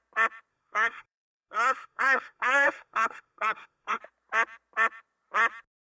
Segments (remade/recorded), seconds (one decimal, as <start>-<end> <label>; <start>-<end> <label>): 0.0-0.5 recorded; 0.5-4.0 remade; 4.0-5.8 recorded